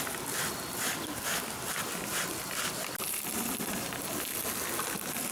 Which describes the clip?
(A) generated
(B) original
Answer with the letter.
B